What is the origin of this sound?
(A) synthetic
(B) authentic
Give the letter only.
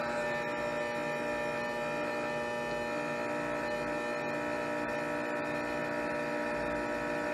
B